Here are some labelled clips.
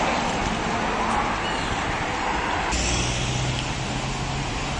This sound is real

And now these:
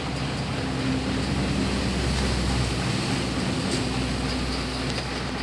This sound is real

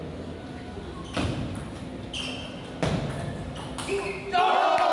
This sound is real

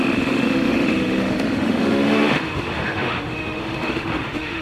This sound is fake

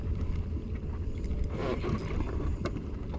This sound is real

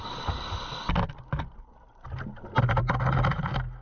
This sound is real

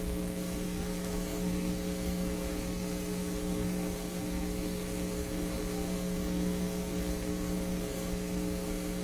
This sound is fake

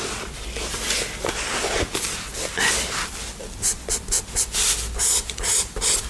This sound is real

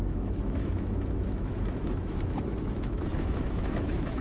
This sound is fake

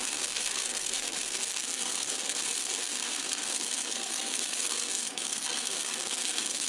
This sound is fake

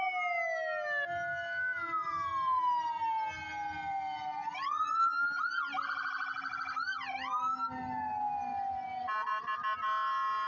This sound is real